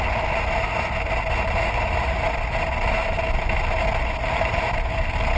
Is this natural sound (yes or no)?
yes